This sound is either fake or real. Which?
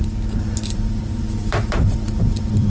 fake